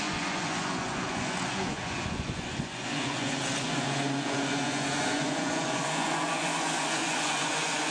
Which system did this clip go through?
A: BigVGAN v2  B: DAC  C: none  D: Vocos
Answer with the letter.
D